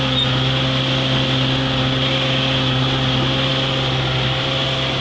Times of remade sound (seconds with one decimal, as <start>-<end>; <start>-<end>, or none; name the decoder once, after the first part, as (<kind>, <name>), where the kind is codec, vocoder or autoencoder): none